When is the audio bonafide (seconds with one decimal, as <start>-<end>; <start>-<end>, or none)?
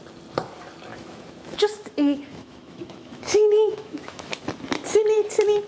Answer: 0.0-0.9; 4.3-5.7